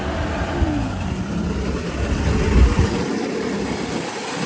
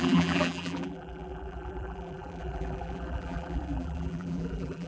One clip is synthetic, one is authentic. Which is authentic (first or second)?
first